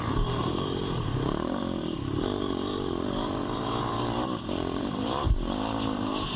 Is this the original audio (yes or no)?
no